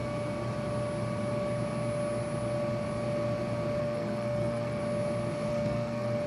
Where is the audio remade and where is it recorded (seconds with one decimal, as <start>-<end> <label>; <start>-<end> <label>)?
0.0-3.8 recorded; 3.8-4.8 remade; 4.8-5.5 recorded; 5.5-6.3 remade